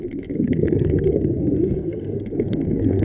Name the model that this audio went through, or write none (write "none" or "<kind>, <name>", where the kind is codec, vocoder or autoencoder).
codec, SNAC